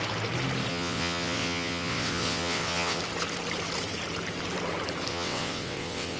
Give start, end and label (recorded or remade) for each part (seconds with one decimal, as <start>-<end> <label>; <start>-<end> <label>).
0.0-0.7 recorded; 0.7-3.0 remade; 3.0-5.1 recorded; 5.1-6.2 remade